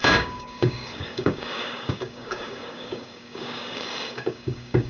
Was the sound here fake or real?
fake